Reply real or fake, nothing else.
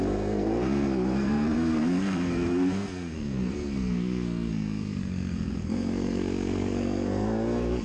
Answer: fake